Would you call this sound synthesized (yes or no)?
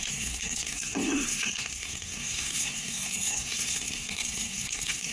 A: yes